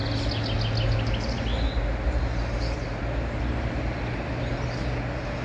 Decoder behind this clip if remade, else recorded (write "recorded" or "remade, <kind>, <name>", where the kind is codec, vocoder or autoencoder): recorded